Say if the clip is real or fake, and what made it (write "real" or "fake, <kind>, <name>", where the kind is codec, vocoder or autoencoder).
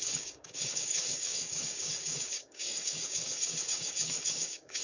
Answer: fake, codec, DAC